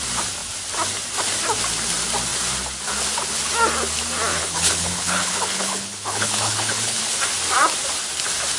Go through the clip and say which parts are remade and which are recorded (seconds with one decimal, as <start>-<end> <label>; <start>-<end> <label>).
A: 0.0-4.3 recorded; 4.3-7.0 remade; 7.0-8.6 recorded